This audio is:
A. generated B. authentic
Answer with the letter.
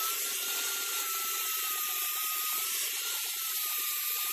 A